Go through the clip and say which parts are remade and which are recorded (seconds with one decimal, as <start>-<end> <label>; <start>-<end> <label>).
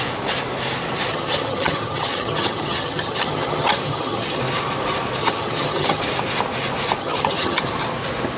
0.0-1.1 recorded; 1.1-4.4 remade; 4.4-5.2 recorded; 5.2-6.0 remade; 6.0-7.0 recorded; 7.0-7.6 remade; 7.6-8.4 recorded